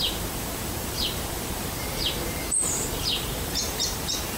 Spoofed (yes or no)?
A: yes